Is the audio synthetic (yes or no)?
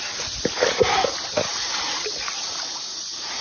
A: no